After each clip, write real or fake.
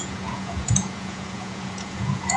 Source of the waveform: fake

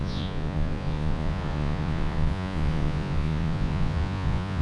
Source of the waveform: fake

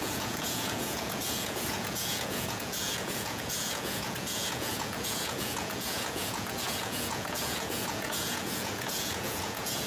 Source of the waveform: fake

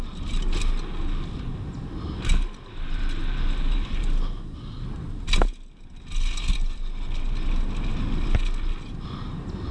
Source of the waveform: real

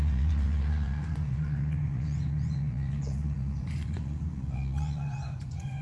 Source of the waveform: fake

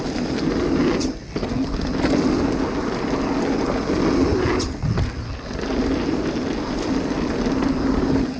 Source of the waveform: real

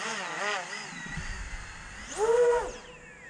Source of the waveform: real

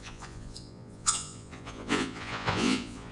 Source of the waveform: fake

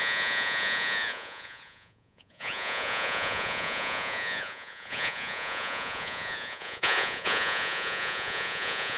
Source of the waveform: fake